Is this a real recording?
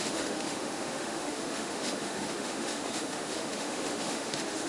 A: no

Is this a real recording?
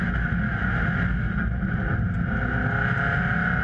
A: yes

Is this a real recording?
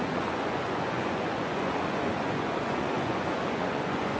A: no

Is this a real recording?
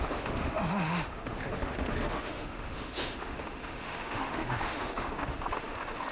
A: no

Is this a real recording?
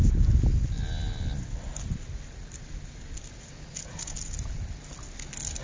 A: yes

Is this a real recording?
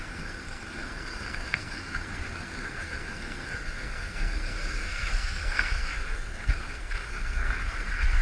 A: no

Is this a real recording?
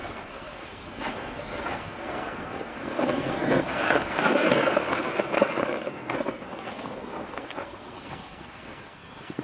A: no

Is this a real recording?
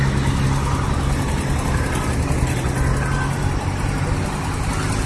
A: yes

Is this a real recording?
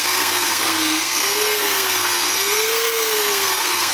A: no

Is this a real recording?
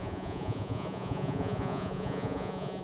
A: no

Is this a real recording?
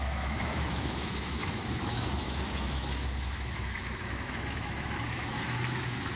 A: no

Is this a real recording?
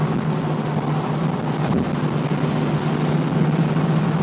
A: yes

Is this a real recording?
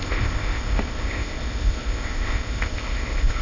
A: no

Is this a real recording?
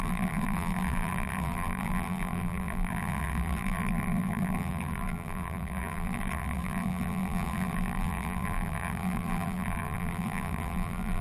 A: no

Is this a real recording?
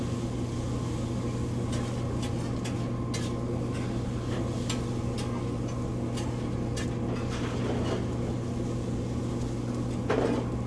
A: yes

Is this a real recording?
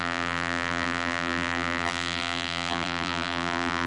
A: no